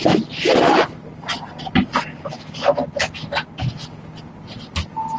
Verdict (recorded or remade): recorded